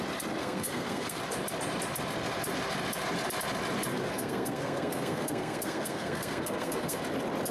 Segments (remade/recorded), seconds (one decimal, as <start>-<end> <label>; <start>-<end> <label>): 0.0-0.4 recorded; 0.4-1.2 remade; 1.2-3.9 recorded; 3.9-7.0 remade; 7.0-7.5 recorded